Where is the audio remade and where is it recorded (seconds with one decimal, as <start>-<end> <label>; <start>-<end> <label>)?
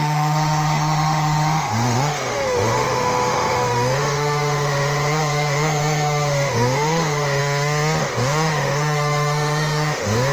0.0-7.4 remade; 7.4-8.0 recorded; 8.0-10.3 remade